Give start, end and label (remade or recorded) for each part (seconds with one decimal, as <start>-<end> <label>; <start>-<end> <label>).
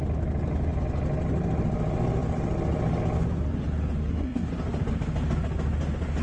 0.0-4.0 recorded; 4.0-4.5 remade; 4.5-6.2 recorded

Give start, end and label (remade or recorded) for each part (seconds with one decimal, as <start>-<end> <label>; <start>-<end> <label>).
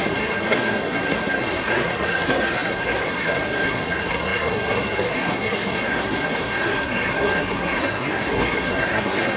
0.0-9.4 remade